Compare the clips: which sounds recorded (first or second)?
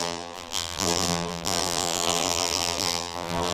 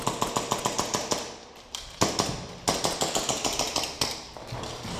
second